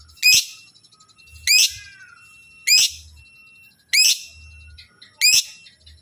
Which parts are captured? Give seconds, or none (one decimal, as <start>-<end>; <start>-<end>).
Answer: 0.0-6.0